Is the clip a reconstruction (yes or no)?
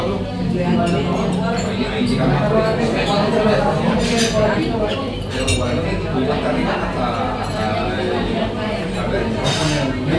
no